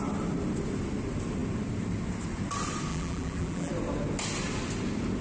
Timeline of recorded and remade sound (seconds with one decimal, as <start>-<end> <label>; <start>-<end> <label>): 0.0-2.9 recorded; 2.9-3.7 remade; 3.7-5.2 recorded